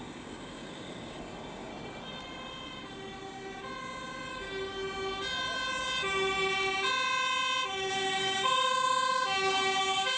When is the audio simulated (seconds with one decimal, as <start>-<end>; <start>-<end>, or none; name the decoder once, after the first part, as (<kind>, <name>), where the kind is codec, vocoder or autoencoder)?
0.0-1.7 (codec, DAC); 4.3-4.7; 7.7-10.2